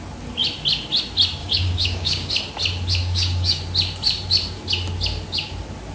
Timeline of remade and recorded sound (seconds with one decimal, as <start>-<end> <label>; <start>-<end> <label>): 0.0-1.4 recorded; 1.4-2.3 remade; 2.3-3.0 recorded; 3.0-3.6 remade; 3.6-5.9 recorded